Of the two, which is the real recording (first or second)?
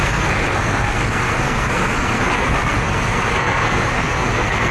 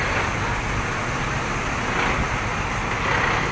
second